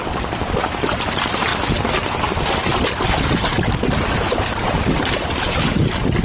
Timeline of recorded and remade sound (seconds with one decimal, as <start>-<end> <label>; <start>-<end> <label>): 0.0-6.2 recorded